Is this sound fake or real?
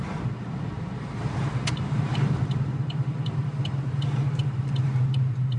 fake